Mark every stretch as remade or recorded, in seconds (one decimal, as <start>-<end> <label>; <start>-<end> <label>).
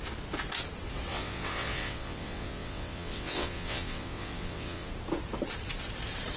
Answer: 0.0-1.1 recorded; 1.1-4.9 remade; 4.9-6.4 recorded